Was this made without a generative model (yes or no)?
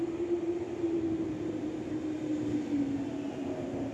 yes